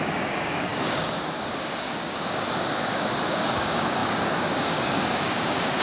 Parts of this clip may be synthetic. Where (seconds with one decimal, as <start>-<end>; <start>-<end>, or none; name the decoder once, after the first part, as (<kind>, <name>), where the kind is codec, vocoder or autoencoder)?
0.0-5.8 (codec, DAC)